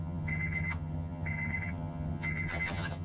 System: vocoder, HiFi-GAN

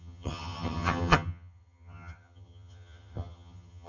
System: vocoder, HiFi-GAN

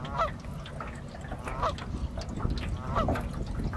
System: none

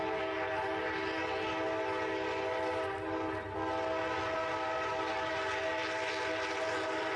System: none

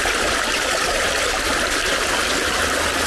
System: none